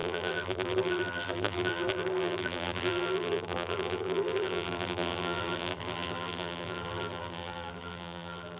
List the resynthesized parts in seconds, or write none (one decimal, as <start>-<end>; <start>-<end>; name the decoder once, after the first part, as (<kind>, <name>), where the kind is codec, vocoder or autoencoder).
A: 0.0-8.6 (vocoder, BigVGAN v2)